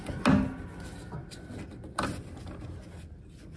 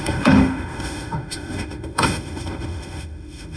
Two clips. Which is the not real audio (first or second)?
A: second